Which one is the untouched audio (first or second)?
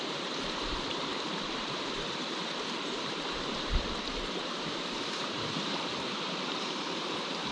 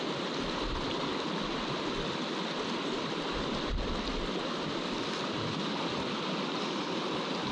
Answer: second